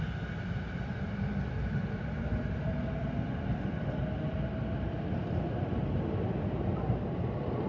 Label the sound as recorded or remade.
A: recorded